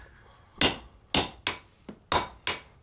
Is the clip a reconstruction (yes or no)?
no